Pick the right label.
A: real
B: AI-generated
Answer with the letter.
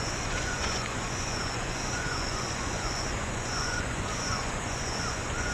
B